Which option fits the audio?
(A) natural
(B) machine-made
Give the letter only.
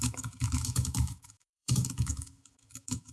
B